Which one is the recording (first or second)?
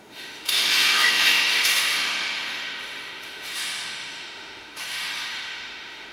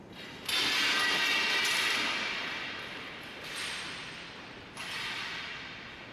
second